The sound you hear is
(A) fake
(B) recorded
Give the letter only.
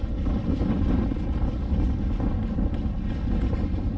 B